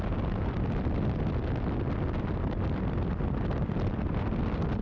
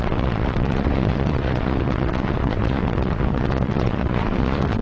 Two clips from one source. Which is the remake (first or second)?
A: second